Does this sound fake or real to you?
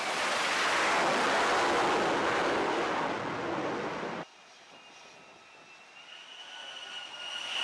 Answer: real